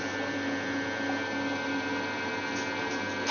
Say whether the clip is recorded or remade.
recorded